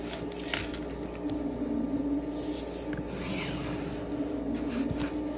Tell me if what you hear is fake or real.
real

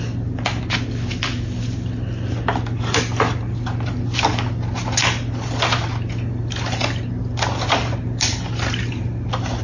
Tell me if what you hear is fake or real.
real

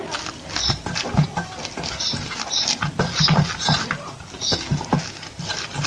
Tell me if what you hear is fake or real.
real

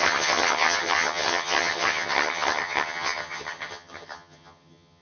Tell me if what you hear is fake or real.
fake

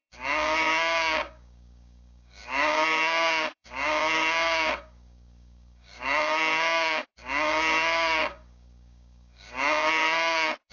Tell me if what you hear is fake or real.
fake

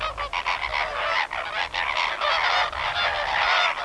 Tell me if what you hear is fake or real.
real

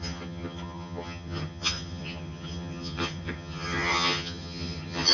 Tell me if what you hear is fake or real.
fake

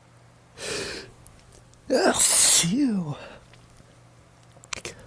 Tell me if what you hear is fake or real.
real